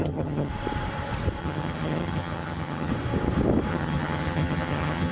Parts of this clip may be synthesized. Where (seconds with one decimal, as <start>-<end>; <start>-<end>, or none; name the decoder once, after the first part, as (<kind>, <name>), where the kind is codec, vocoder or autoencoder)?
0.0-0.5 (vocoder, HiFi-GAN); 1.4-2.9; 3.7-5.1